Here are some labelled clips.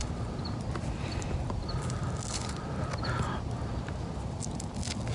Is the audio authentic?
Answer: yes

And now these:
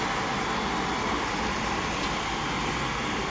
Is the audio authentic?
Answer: yes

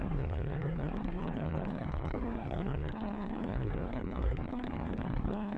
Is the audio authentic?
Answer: no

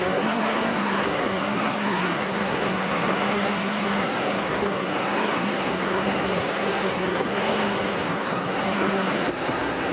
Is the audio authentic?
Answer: no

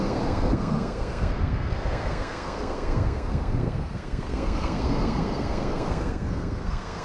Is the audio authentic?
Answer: no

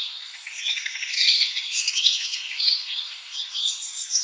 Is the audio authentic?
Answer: no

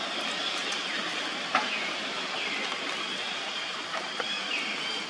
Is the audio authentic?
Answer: yes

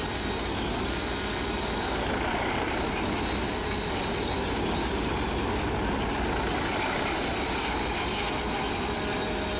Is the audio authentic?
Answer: yes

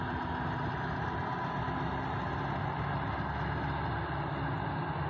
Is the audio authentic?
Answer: yes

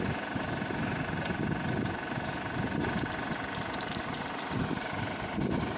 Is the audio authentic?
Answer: yes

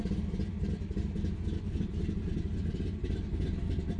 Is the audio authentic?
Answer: yes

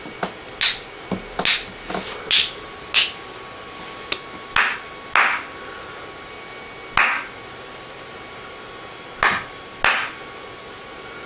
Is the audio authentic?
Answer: yes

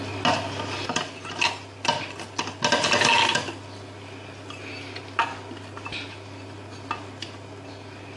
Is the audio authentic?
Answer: yes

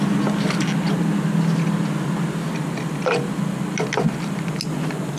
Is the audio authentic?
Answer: yes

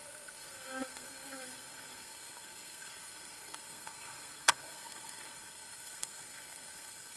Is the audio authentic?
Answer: no